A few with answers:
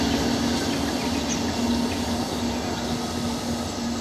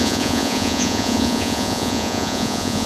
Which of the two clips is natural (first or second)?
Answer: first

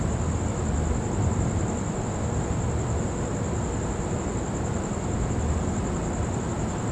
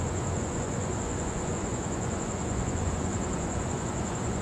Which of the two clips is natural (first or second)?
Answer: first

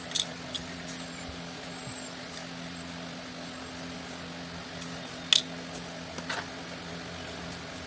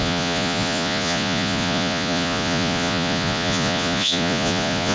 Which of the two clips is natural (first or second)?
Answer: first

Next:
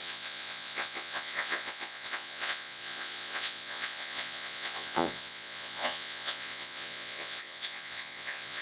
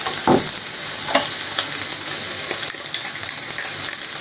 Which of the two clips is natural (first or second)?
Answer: second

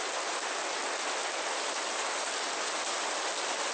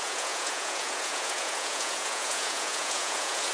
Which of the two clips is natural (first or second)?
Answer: first